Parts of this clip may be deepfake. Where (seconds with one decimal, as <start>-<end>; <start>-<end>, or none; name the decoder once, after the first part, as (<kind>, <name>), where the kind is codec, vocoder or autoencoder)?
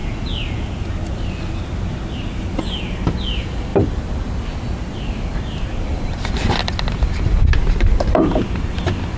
3.7-6.3 (vocoder, BigVGAN v2)